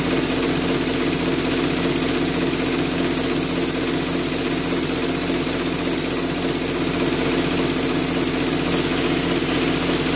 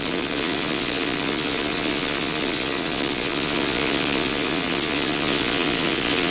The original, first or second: first